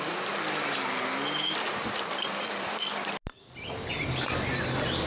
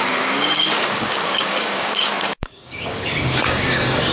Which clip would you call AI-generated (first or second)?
second